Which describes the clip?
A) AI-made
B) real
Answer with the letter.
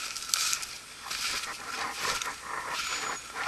B